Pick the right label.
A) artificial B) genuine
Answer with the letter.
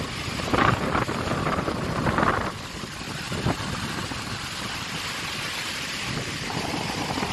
B